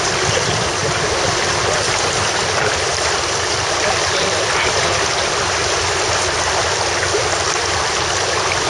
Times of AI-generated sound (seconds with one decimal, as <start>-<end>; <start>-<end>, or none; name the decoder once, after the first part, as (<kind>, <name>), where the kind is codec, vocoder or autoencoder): 0.0-0.8 (vocoder, BigVGAN v2); 2.4-8.7